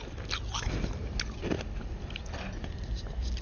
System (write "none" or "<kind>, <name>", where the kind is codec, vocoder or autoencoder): none